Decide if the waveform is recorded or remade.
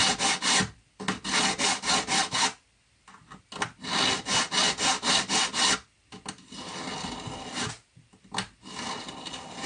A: recorded